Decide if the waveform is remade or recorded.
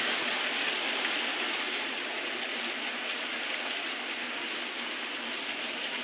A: recorded